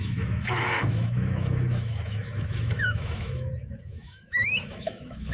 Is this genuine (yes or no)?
no